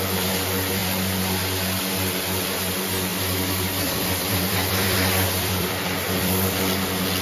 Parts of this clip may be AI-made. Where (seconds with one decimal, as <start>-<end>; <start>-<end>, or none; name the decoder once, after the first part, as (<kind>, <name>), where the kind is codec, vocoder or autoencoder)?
3.1-6.6 (vocoder, BigVGAN v2)